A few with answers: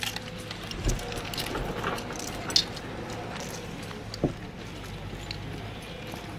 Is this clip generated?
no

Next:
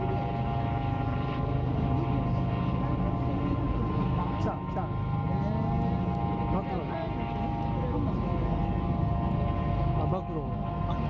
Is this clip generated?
no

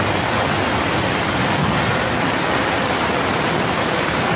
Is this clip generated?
no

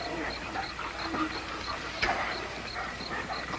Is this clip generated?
no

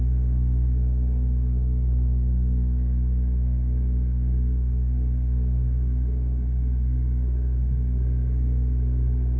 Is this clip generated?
yes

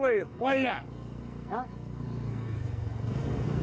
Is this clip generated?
yes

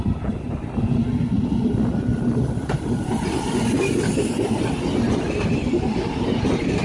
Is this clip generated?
no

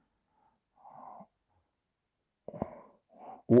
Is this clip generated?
no